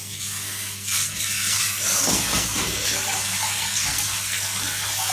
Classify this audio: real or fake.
fake